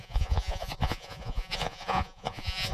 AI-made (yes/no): yes